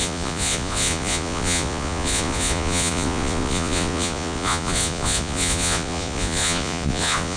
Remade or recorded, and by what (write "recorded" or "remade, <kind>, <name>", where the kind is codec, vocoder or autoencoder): remade, vocoder, Vocos